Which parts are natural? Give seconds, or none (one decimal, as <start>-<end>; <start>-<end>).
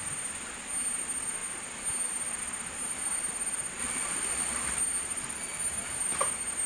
0.0-3.8; 4.8-6.7